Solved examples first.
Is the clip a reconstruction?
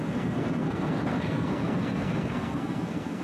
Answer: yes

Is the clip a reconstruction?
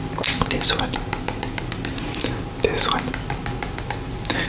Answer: no